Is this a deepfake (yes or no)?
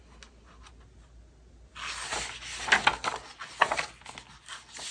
no